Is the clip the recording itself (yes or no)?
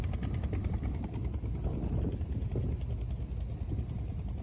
yes